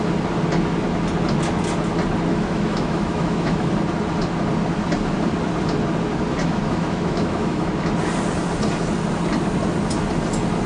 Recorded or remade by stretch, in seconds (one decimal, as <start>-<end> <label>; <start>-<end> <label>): 0.0-2.3 recorded; 2.3-3.7 remade; 3.7-6.4 recorded; 6.4-7.7 remade; 7.7-10.7 recorded